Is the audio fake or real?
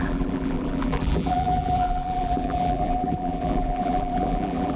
fake